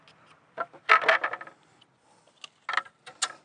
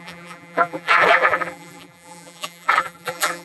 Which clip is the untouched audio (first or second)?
first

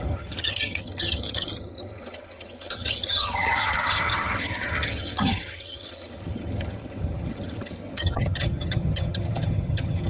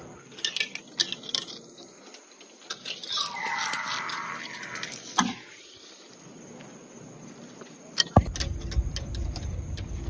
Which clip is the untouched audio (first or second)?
second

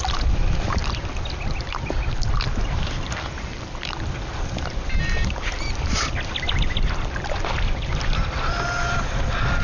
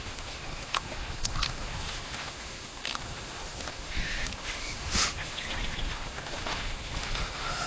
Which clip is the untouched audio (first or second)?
first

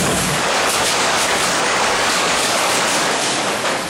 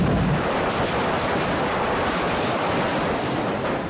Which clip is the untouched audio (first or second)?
second